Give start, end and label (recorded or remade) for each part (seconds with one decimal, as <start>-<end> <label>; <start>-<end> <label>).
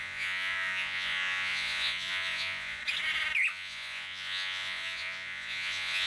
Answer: 0.0-2.8 remade; 2.8-3.5 recorded; 3.5-6.1 remade